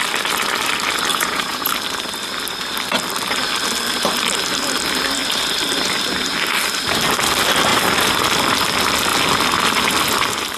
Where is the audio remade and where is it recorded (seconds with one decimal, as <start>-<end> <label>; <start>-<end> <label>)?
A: 0.0-1.1 recorded; 1.1-1.7 remade; 1.7-10.6 recorded